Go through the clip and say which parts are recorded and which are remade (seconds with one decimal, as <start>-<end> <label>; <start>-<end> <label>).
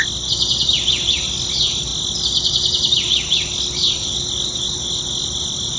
0.0-5.8 recorded